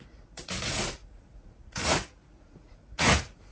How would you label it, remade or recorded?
remade